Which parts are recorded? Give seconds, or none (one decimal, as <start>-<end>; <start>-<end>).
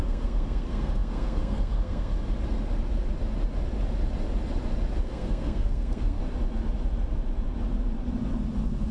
2.1-5.0; 6.2-8.9